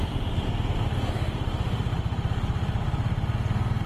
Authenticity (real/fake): real